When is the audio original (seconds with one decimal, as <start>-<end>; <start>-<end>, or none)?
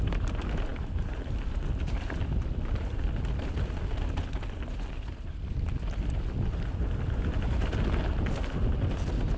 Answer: 0.0-0.7; 3.8-9.4